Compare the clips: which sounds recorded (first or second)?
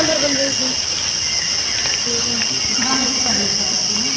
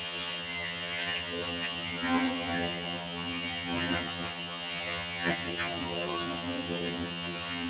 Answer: first